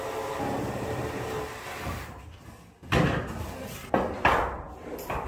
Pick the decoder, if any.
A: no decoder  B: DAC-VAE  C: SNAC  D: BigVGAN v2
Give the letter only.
A